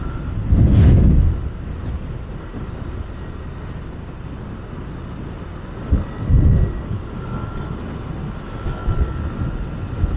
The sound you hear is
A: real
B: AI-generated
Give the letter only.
A